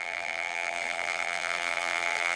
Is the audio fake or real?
fake